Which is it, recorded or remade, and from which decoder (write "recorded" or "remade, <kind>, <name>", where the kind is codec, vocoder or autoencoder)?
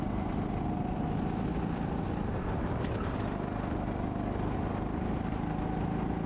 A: recorded